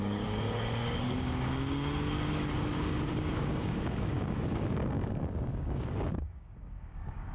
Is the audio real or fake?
fake